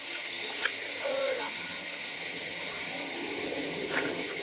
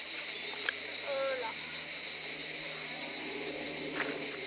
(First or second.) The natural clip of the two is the second